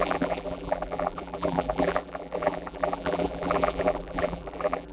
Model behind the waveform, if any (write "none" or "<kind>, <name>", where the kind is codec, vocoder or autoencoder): vocoder, BigVGAN v2